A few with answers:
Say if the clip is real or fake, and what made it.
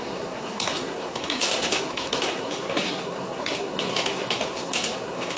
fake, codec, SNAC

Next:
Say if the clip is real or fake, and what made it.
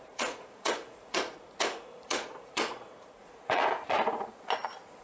fake, vocoder, Vocos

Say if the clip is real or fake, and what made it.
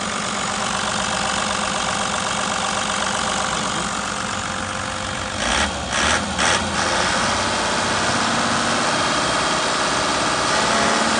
real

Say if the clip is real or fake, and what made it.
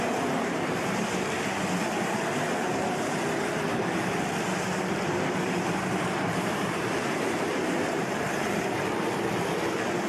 fake, vocoder, BigVGAN v2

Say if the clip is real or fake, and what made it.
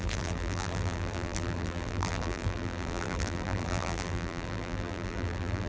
fake, vocoder, BigVGAN v2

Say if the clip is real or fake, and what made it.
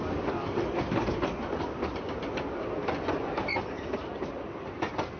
real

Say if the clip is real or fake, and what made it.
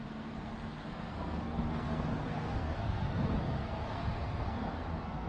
fake, codec, SNAC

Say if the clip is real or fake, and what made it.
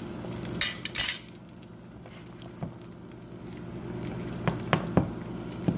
real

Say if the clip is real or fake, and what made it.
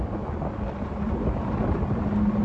real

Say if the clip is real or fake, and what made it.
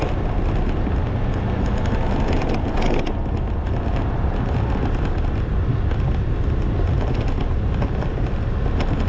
real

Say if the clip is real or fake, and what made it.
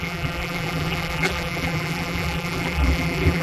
fake, vocoder, BigVGAN v2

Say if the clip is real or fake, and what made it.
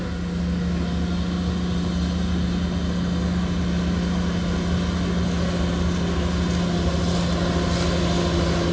real